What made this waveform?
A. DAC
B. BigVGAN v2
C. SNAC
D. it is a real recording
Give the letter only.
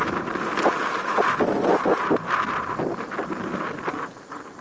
D